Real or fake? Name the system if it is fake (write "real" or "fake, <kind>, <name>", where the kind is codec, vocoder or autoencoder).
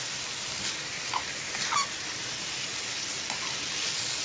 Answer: real